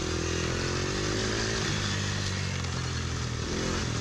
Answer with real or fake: real